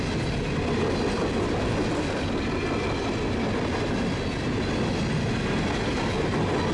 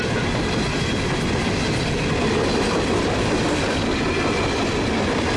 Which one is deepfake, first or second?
second